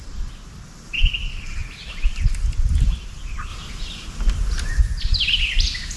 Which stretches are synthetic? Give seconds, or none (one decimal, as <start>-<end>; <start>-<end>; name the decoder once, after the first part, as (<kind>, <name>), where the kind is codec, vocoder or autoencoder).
0.0-6.0 (vocoder, BigVGAN v2)